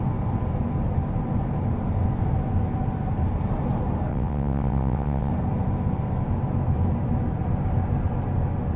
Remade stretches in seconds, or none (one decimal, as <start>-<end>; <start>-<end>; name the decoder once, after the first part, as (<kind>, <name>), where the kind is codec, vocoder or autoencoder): 4.1-5.3 (vocoder, WaveNeXt)